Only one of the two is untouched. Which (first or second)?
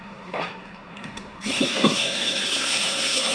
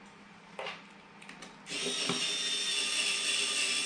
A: second